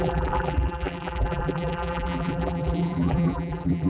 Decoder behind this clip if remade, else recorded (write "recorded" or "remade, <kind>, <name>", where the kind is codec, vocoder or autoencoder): remade, vocoder, BigVGAN v2